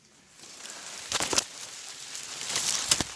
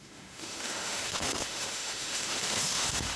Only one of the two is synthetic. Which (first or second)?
second